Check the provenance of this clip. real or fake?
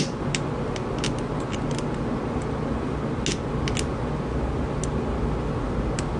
real